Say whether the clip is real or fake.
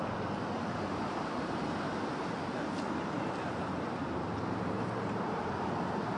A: fake